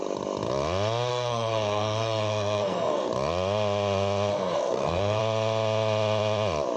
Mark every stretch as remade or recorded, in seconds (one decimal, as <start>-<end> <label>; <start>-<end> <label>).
0.0-1.1 recorded; 1.1-3.1 remade; 3.1-4.3 recorded; 4.3-5.2 remade; 5.2-6.8 recorded